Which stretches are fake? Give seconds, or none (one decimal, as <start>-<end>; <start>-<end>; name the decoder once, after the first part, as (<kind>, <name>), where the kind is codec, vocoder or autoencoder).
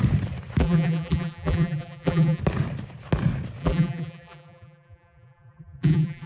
0.6-2.4 (vocoder, BigVGAN v2); 3.6-6.3